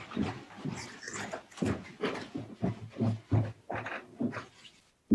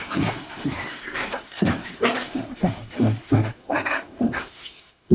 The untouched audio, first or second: first